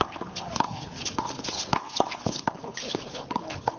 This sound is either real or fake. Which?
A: fake